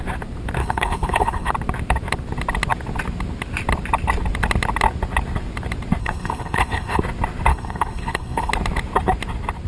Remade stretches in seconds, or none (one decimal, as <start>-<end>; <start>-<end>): 0.6-1.5; 6.0-7.0; 7.5-8.5